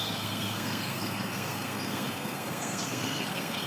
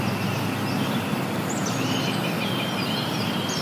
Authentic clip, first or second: second